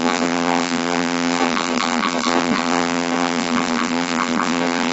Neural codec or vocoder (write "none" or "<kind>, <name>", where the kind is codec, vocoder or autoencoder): vocoder, BigVGAN v2